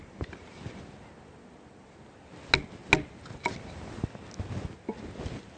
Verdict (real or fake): real